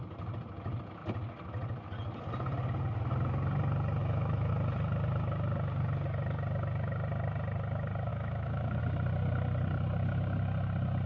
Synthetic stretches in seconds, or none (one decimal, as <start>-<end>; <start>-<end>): 4.0-4.5; 8.1-8.8